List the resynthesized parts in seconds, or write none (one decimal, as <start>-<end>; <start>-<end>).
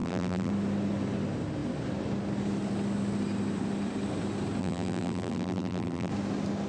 0.0-0.5; 4.6-6.1